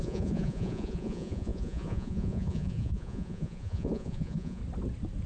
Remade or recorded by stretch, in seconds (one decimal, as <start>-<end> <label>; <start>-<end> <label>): 0.0-4.6 remade; 4.6-5.3 recorded